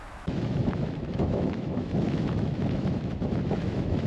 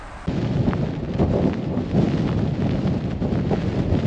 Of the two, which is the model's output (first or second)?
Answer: first